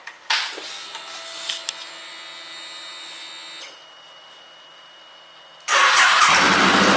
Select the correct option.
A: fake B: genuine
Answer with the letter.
B